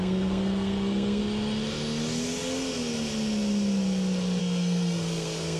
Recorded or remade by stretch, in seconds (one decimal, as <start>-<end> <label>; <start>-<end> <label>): 0.0-1.2 remade; 1.2-4.4 recorded; 4.4-5.6 remade

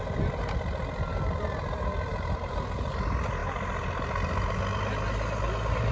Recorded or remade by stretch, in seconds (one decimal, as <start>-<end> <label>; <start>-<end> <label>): 0.0-5.9 recorded

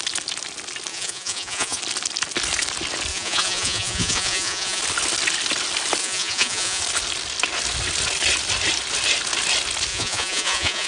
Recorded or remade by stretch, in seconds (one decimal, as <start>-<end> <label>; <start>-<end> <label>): 0.0-0.9 recorded; 0.9-1.8 remade; 1.8-3.1 recorded; 3.1-4.8 remade; 4.8-6.0 recorded; 6.0-6.8 remade; 6.8-9.9 recorded; 9.9-10.9 remade

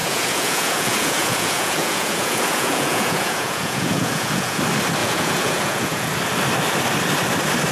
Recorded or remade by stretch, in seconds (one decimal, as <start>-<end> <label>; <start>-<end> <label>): 0.0-4.6 remade; 4.6-5.0 recorded; 5.0-6.1 remade; 6.1-7.7 recorded

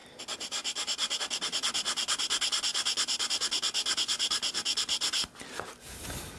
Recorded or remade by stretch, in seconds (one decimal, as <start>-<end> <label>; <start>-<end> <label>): 0.0-6.4 recorded

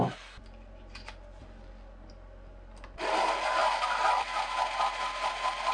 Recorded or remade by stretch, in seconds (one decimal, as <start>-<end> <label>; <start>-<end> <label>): 0.0-5.7 recorded